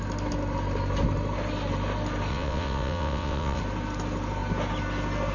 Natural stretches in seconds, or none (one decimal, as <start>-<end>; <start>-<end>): 0.0-2.3; 3.6-5.3